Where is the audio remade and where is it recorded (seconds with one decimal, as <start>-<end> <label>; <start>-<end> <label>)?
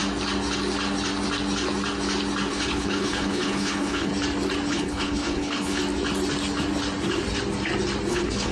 0.0-2.5 recorded; 2.5-4.1 remade; 4.1-4.7 recorded; 4.7-5.8 remade; 5.8-8.1 recorded; 8.1-8.5 remade